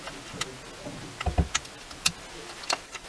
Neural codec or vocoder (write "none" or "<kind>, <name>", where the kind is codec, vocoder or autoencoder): none